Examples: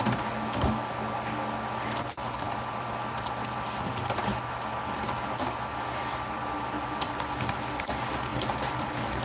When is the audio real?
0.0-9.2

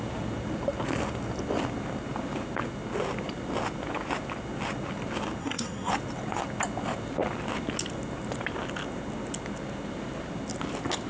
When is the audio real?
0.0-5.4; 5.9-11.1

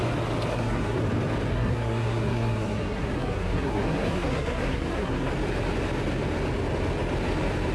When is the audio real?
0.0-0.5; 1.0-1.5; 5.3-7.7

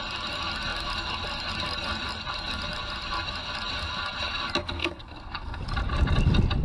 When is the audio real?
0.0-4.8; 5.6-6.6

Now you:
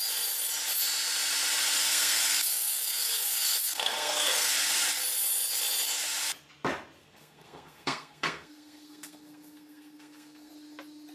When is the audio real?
0.0-1.8; 4.5-7.0; 10.5-11.1

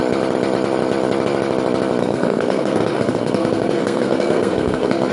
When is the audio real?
0.0-2.0

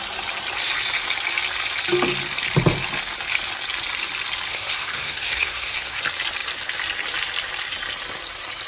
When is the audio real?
0.0-4.5; 6.0-8.7

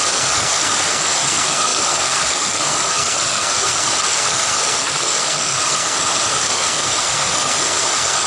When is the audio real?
none